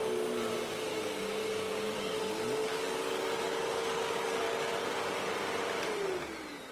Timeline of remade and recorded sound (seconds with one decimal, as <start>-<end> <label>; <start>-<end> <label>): 0.0-0.9 recorded; 0.9-2.2 remade; 2.2-2.6 recorded; 2.6-4.7 remade; 4.7-6.7 recorded